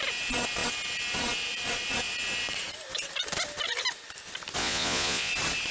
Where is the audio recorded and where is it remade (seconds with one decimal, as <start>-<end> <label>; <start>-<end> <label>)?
0.0-4.6 recorded; 4.6-5.3 remade; 5.3-5.7 recorded